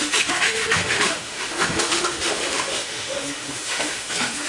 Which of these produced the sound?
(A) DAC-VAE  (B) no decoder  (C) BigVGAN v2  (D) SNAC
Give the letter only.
A